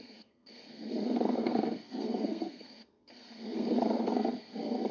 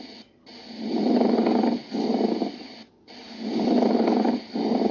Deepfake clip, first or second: first